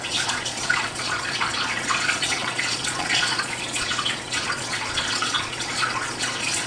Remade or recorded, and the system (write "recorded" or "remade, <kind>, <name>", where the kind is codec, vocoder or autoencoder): remade, vocoder, Vocos